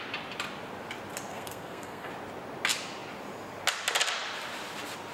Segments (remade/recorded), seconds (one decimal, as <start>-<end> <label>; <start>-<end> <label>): 0.0-1.3 recorded; 1.3-2.1 remade; 2.1-5.1 recorded